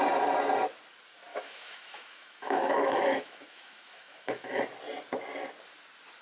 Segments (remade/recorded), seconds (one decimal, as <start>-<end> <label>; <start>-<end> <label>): 0.0-1.3 recorded; 1.3-4.6 remade; 4.6-6.2 recorded